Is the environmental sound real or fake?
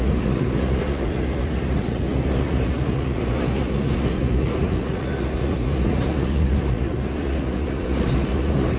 fake